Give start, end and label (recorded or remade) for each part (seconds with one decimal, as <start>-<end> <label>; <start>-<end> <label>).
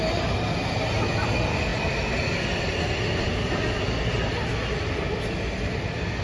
0.0-6.2 recorded